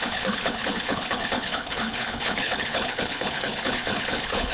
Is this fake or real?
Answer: fake